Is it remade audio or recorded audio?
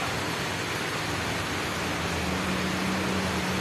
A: recorded